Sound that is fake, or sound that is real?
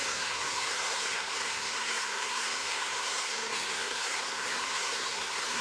fake